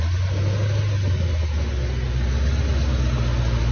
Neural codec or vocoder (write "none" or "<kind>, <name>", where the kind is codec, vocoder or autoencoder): none